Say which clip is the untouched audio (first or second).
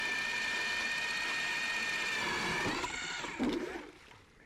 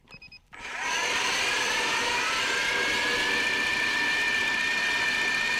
first